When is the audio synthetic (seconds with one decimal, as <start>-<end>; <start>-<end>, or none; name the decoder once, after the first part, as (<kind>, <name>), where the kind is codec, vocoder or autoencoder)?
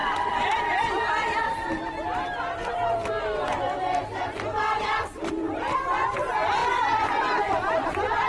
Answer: 0.0-0.6 (vocoder, BigVGAN v2); 6.6-7.9